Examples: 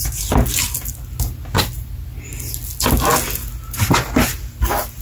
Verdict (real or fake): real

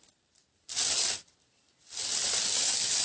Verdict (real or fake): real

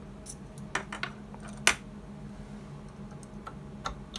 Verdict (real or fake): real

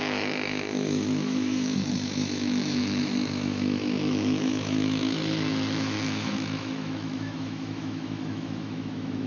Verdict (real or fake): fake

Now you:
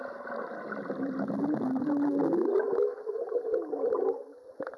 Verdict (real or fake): real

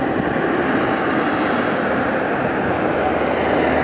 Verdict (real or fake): real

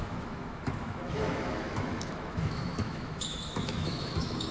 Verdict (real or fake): fake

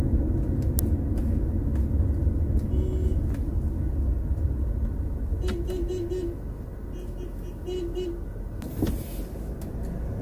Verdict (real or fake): real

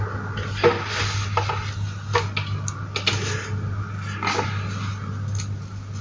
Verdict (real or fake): real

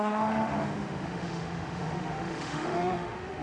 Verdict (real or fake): fake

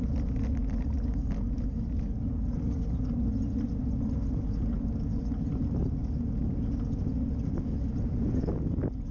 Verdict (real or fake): real